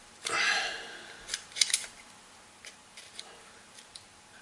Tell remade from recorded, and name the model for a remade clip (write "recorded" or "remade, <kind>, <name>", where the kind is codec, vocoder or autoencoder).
remade, vocoder, BigVGAN v2